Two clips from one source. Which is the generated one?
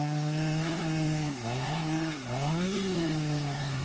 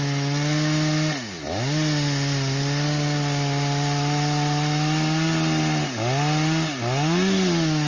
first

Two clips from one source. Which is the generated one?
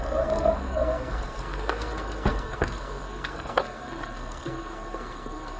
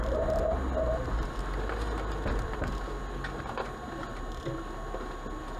first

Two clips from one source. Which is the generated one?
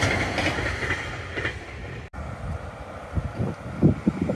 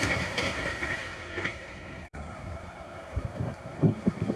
second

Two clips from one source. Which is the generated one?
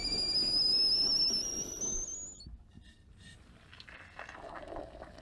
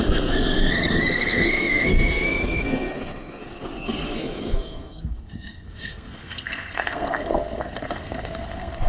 second